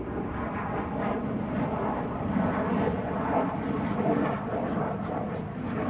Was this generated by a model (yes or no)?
no